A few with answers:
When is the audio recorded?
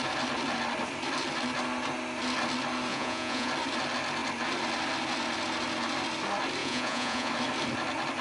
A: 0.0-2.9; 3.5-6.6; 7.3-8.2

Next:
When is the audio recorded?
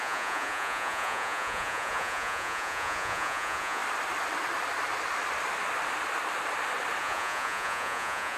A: 3.8-7.0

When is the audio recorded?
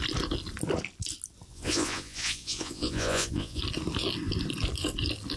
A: 0.0-1.5; 3.6-5.4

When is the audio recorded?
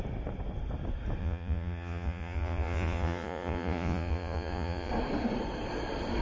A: 0.0-1.2; 4.9-6.2